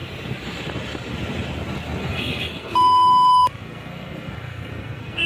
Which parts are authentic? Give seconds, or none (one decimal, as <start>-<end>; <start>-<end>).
0.0-2.0